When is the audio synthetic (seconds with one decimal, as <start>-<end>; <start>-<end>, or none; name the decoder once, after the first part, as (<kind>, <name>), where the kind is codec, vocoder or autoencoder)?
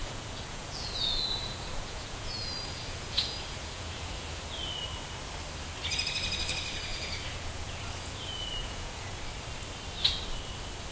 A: 0.0-4.4 (vocoder, Vocos); 6.9-9.2